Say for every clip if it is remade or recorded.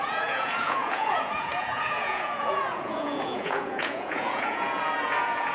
remade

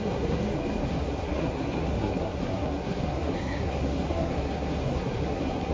remade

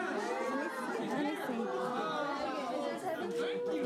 recorded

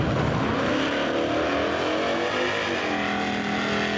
recorded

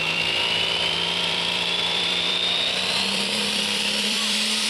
remade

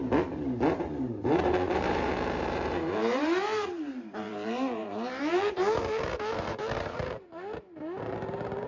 remade